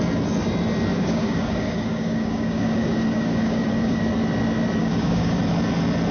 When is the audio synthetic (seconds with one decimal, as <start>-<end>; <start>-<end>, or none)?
0.9-4.0; 4.8-5.4